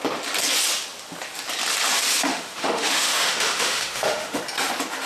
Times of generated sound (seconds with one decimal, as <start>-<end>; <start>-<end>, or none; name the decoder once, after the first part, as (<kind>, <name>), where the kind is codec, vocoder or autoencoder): 2.3-4.4 (autoencoder, DAC-VAE)